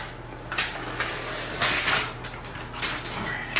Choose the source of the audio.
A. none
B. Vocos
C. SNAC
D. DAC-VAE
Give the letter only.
A